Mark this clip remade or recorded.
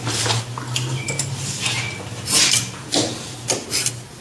recorded